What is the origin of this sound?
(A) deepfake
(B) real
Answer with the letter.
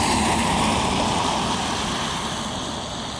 A